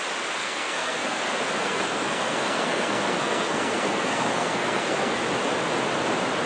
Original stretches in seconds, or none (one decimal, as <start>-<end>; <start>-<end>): 0.0-0.4; 1.2-1.6; 5.2-6.5